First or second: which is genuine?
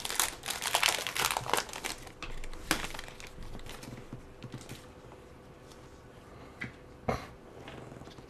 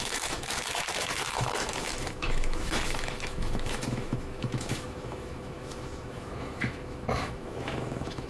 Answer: first